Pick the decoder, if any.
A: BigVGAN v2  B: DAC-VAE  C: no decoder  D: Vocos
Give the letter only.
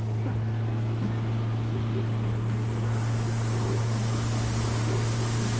C